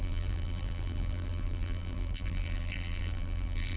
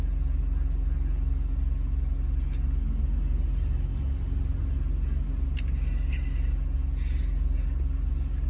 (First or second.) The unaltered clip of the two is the second